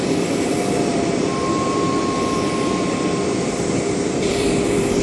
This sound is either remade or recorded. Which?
remade